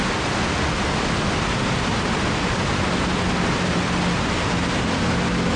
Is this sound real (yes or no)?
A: yes